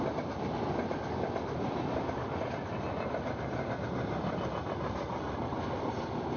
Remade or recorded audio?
recorded